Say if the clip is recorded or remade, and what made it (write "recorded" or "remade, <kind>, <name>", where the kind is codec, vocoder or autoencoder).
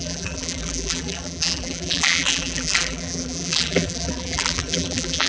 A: remade, vocoder, BigVGAN v2